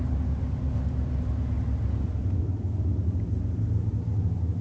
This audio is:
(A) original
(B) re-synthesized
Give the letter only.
A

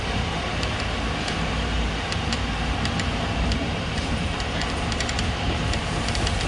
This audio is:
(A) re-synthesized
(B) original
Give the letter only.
A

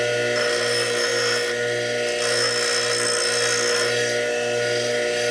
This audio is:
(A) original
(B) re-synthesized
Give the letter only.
A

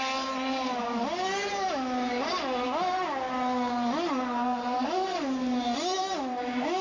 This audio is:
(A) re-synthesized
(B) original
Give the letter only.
B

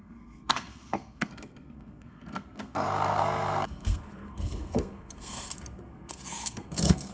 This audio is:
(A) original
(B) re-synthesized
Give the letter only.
B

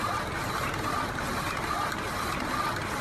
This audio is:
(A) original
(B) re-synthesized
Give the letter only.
A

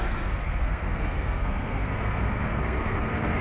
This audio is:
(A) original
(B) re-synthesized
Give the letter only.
B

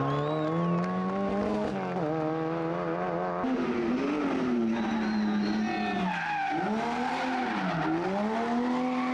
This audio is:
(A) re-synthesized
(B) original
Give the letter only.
B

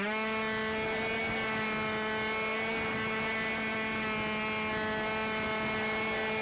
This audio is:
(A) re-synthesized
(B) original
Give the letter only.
B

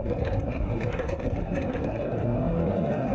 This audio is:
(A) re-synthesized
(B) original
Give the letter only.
A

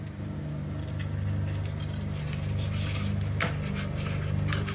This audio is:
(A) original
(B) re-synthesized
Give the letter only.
A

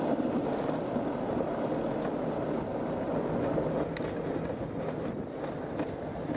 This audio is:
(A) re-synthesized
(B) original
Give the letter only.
B